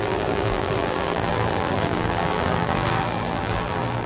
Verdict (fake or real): fake